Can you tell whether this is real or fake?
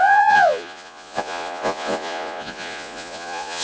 fake